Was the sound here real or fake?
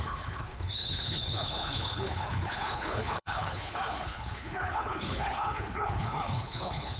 fake